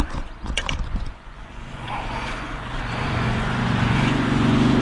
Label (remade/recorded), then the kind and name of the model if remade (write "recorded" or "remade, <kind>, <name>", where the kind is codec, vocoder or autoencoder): remade, vocoder, Vocos